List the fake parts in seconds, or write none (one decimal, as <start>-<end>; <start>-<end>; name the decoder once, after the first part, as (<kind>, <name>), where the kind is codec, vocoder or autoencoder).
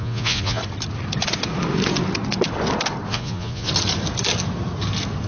0.0-0.6 (vocoder, Vocos); 3.1-3.7